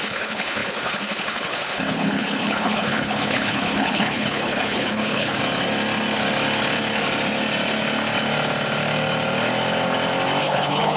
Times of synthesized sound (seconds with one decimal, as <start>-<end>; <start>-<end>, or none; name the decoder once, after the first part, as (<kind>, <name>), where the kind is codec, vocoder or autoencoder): 0.0-5.4 (codec, HILCodec); 10.4-11.0